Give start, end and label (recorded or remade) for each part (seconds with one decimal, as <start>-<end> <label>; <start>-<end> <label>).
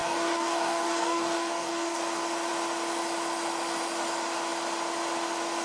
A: 0.0-2.0 remade; 2.0-5.6 recorded